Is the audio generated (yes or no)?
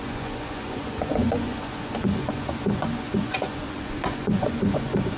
yes